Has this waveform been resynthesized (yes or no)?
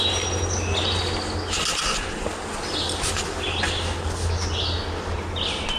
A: no